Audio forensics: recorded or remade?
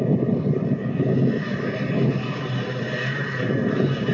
recorded